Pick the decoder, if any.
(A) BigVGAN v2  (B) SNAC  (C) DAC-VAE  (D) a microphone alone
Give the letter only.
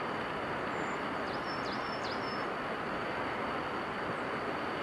D